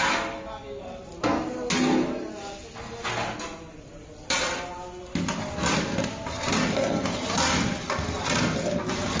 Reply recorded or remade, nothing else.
recorded